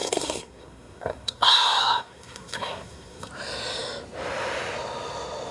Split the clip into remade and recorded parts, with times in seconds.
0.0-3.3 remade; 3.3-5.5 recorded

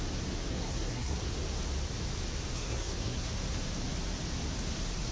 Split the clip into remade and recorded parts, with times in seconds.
0.0-0.5 recorded; 0.5-1.2 remade; 1.2-2.5 recorded; 2.5-3.3 remade; 3.3-5.1 recorded

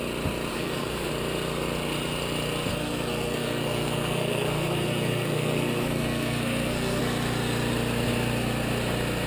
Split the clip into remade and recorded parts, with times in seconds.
0.0-0.5 recorded; 0.5-1.1 remade; 1.1-2.7 recorded; 2.7-7.0 remade; 7.0-9.3 recorded